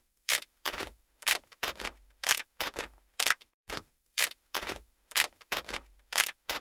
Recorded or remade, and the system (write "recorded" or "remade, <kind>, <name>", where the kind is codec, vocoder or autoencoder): remade, autoencoder, DAC-VAE